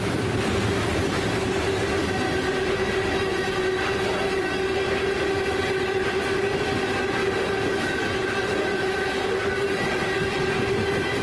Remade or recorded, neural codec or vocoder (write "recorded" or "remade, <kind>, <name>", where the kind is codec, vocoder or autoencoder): recorded